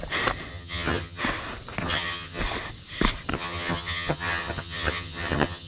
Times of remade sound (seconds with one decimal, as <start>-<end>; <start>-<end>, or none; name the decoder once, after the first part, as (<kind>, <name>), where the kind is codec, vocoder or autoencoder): 0.5-1.2 (vocoder, HiFi-GAN); 1.8-2.4; 3.3-5.7